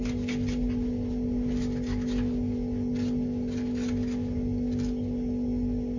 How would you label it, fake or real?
real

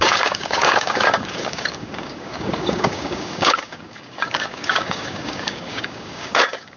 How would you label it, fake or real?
fake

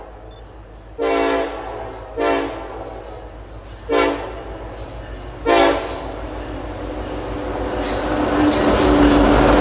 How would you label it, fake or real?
real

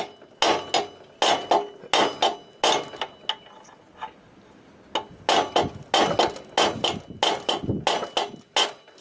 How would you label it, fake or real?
real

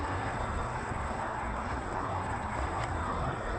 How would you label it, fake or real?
fake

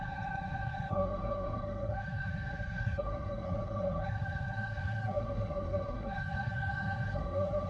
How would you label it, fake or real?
fake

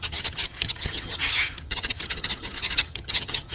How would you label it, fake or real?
fake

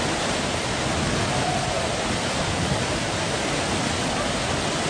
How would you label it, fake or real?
real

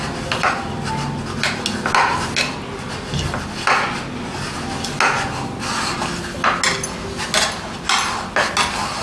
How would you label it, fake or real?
real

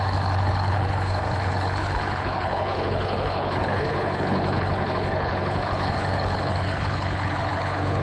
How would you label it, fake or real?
fake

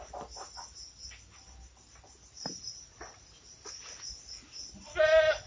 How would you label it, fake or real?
real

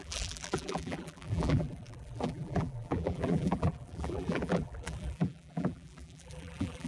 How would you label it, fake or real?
fake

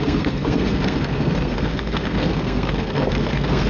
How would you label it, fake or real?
fake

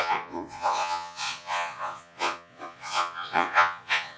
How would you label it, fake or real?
fake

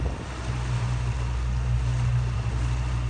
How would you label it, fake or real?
real